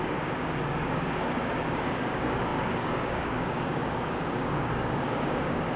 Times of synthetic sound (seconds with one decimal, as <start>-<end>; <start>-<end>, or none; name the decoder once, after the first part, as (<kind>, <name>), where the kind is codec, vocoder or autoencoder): 0.0-5.8 (codec, DAC)